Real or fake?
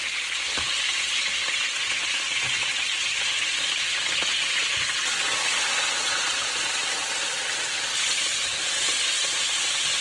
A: real